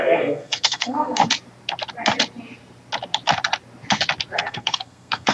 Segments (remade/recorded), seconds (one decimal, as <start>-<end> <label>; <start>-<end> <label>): 0.0-1.2 remade; 1.2-4.4 recorded; 4.4-5.3 remade